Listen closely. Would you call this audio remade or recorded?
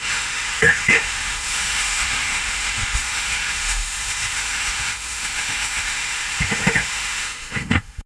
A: remade